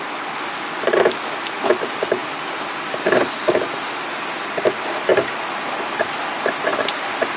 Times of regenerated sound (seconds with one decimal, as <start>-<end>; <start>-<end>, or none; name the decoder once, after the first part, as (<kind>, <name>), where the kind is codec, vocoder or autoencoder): none